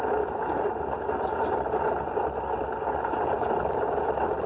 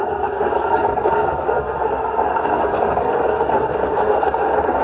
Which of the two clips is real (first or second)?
first